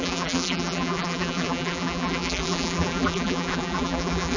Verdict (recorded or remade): remade